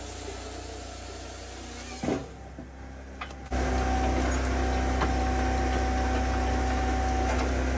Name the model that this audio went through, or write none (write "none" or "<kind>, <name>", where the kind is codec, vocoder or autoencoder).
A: none